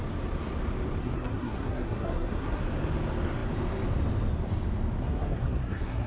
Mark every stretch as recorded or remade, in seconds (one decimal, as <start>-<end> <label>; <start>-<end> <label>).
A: 0.0-1.0 recorded; 1.0-2.6 remade; 2.6-5.0 recorded; 5.0-6.1 remade